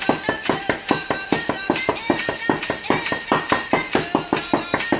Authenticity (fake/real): real